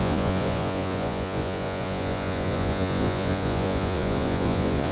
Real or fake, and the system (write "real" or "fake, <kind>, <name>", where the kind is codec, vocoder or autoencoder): fake, vocoder, Vocos